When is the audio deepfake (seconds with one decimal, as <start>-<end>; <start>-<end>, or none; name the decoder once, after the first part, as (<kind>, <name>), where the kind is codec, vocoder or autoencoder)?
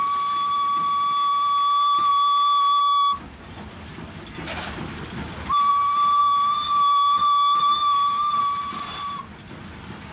2.8-3.4 (codec, DAC); 6.2-8.4